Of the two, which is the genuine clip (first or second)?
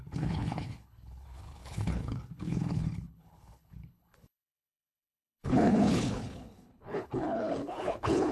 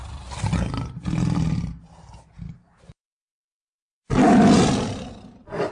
second